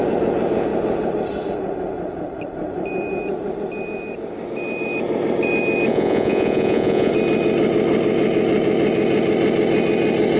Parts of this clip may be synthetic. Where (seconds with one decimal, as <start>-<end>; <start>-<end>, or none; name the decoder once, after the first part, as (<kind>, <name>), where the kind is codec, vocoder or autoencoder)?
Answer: 5.9-7.1 (vocoder, Vocos)